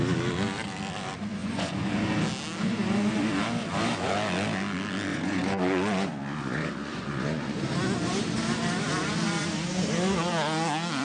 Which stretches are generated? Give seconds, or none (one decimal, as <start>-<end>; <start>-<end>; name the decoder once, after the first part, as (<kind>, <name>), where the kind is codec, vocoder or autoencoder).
1.4-1.9 (vocoder, Vocos); 5.1-7.6